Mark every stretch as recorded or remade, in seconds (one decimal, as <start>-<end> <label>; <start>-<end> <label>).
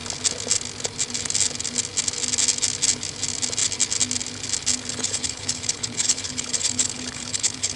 0.0-4.9 recorded; 4.9-7.8 remade